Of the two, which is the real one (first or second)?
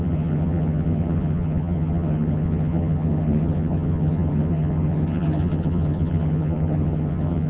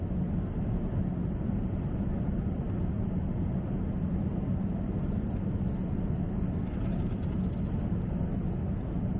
second